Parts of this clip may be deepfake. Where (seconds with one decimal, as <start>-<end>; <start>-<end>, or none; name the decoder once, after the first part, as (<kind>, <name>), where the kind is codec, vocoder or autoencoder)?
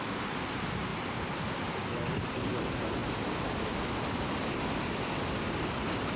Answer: none